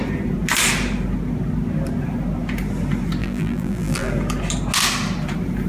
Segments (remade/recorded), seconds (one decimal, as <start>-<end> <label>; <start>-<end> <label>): 0.0-3.2 recorded; 3.2-4.1 remade; 4.1-5.7 recorded